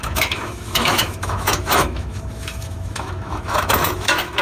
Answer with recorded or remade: remade